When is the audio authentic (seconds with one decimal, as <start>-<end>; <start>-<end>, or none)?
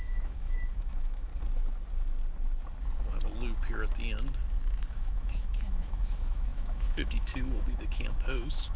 1.3-4.9